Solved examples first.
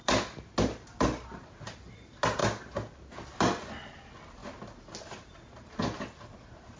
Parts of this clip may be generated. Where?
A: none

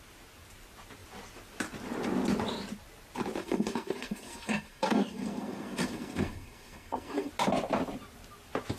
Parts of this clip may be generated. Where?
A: 3.4-7.3 (codec, SNAC)